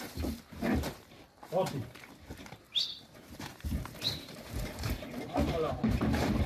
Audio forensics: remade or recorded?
remade